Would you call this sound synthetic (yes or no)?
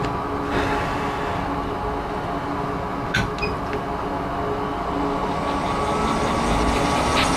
no